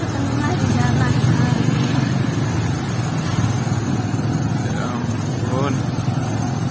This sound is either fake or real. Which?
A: real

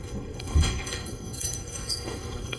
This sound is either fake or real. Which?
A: fake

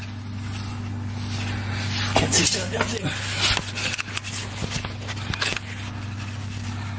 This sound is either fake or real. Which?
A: real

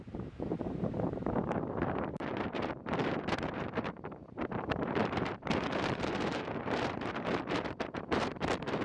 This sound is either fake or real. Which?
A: fake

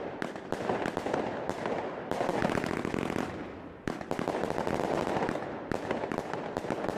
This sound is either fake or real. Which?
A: real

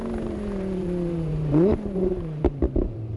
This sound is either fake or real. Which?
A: fake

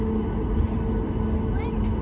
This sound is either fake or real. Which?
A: real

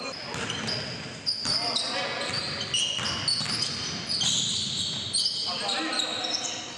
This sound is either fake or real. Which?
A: real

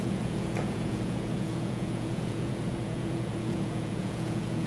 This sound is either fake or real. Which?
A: fake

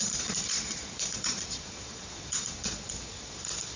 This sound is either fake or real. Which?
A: fake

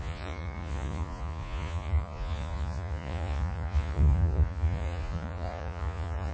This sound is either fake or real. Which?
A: fake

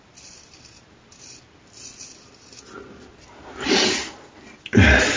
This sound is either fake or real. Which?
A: real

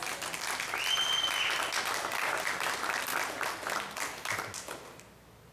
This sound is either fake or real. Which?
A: real